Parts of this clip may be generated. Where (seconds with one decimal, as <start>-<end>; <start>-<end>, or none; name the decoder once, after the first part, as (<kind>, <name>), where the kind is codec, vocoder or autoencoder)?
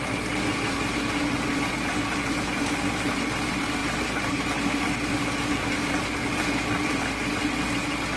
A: none